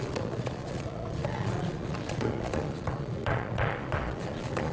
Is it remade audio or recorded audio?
remade